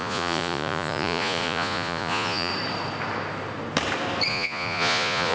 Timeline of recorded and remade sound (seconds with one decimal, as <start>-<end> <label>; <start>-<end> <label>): 0.0-2.5 remade; 2.5-4.3 recorded; 4.3-5.3 remade